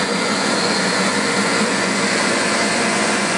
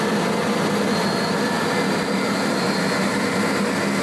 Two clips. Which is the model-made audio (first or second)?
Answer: first